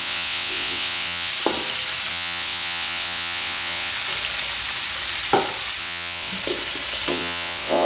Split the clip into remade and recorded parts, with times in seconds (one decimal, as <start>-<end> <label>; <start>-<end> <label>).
0.0-1.3 remade; 1.3-2.1 recorded; 2.1-3.9 remade; 3.9-5.8 recorded; 5.8-6.3 remade; 6.3-7.1 recorded; 7.1-7.9 remade